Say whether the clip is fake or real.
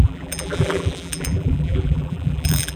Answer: fake